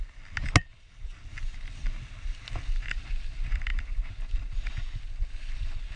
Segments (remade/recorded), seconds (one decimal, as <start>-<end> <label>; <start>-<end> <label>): 0.0-6.0 recorded